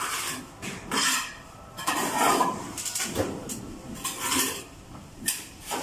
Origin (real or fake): fake